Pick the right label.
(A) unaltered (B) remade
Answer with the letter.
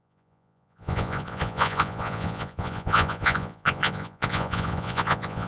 B